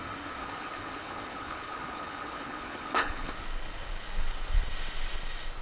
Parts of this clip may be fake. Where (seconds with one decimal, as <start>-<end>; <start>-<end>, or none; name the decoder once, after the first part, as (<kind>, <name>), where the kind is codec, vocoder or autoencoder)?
0.4-3.3 (codec, HILCodec)